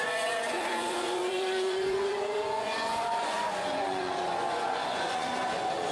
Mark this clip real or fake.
fake